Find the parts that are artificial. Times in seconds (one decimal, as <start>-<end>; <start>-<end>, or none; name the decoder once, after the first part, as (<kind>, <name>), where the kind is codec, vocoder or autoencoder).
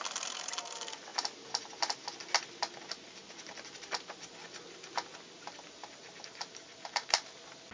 none